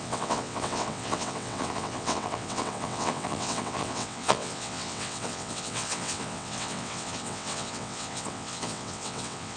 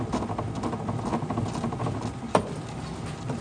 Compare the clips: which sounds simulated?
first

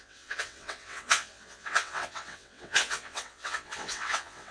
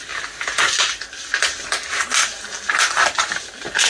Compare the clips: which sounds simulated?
first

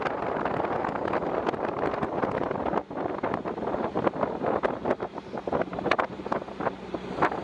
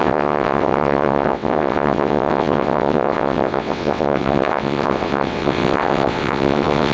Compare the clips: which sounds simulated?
second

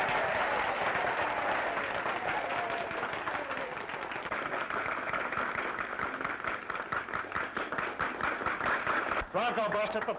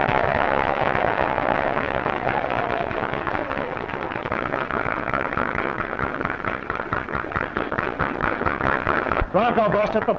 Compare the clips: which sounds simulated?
second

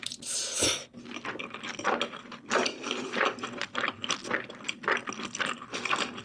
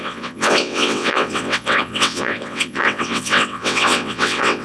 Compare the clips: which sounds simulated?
second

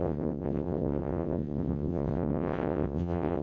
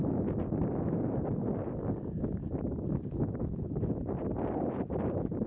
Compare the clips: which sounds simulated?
first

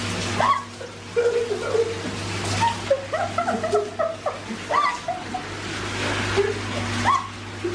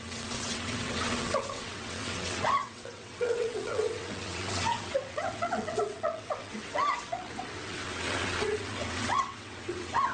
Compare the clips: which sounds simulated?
second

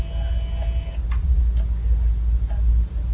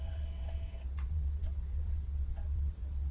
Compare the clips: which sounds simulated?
second